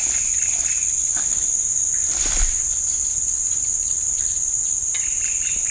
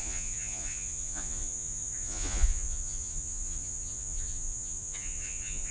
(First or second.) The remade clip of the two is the second